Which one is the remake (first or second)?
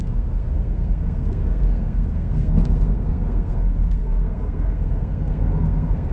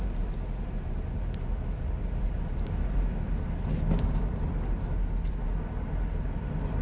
first